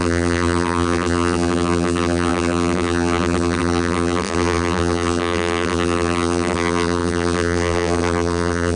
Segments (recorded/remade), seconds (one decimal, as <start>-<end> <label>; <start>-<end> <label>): 0.0-8.8 remade